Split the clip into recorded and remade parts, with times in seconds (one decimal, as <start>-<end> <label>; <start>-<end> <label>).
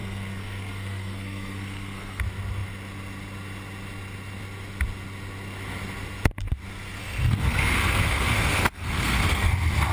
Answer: 0.0-2.2 remade; 2.2-7.0 recorded; 7.0-9.5 remade; 9.5-9.9 recorded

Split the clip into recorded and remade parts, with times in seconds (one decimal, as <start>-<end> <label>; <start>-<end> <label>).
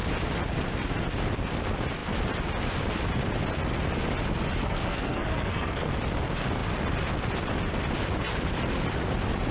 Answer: 0.0-4.6 recorded; 4.6-5.9 remade; 5.9-9.5 recorded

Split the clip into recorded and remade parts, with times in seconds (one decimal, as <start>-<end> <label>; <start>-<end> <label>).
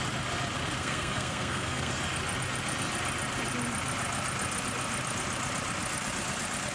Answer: 0.0-0.8 recorded; 0.8-1.9 remade; 1.9-6.7 recorded